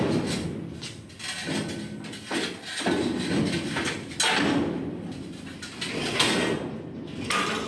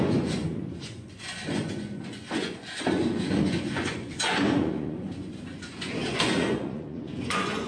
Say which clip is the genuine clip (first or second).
first